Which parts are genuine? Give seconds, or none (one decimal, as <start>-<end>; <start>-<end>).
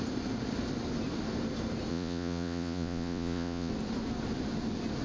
0.0-1.9; 3.7-5.0